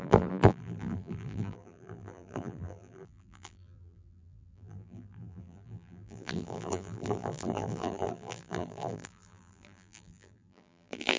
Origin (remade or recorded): remade